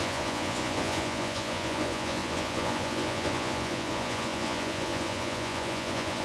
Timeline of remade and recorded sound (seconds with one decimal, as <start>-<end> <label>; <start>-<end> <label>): 0.0-6.2 remade